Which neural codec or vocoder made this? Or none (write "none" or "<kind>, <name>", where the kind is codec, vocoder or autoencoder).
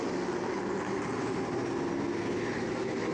none